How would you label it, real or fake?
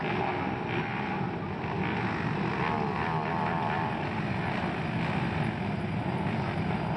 real